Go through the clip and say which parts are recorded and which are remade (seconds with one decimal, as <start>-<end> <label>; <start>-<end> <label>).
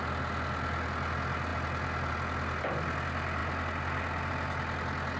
0.0-5.2 recorded